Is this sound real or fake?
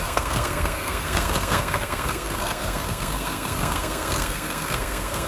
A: fake